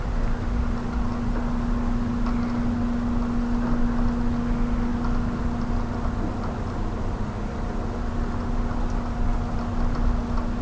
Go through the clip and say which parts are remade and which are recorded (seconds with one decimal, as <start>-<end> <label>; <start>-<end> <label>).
0.0-10.6 recorded